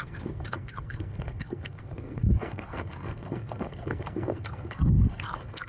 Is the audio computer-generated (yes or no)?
yes